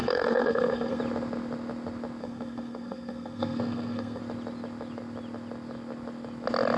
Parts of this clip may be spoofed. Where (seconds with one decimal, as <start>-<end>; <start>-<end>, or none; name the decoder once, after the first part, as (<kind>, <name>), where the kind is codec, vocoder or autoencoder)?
0.0-1.0 (codec, SNAC); 2.2-4.2